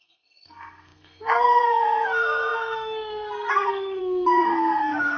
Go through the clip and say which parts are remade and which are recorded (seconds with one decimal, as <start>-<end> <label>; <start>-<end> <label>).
0.0-5.2 remade